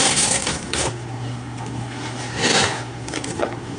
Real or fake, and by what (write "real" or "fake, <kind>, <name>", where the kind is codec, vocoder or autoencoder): fake, codec, SNAC